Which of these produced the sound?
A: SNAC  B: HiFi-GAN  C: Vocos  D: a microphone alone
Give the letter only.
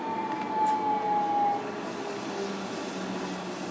D